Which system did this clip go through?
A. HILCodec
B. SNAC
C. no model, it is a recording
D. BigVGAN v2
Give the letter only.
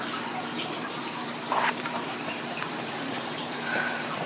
D